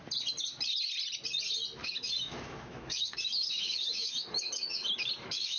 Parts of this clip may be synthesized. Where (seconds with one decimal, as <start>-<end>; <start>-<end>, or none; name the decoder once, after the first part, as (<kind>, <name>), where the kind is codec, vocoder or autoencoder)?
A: 1.8-5.6 (autoencoder, DAC-VAE)